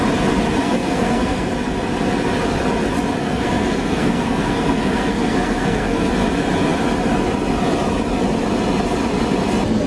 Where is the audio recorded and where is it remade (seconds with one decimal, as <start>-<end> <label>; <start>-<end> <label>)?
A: 0.0-0.6 recorded; 0.6-1.5 remade; 1.5-3.2 recorded; 3.2-6.1 remade; 6.1-9.9 recorded